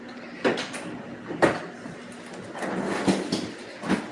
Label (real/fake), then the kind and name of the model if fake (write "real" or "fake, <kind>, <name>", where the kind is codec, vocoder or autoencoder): real